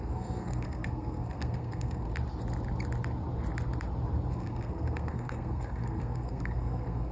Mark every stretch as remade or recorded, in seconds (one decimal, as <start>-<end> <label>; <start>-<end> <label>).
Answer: 0.0-2.1 remade; 2.1-4.3 recorded; 4.3-7.1 remade